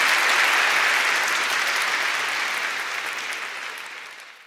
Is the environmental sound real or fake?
real